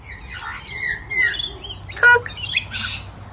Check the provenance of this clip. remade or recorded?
recorded